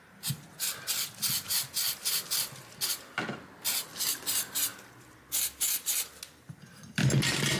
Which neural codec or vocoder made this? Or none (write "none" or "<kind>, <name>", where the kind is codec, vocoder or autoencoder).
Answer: none